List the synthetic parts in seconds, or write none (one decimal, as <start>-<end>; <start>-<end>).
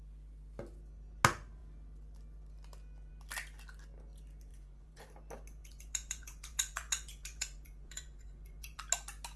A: 4.5-5.0; 5.6-8.8